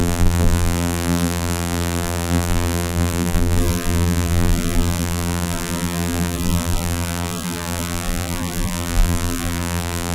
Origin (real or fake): fake